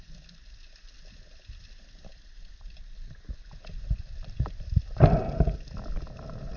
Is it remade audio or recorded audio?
recorded